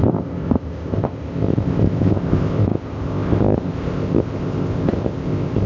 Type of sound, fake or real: fake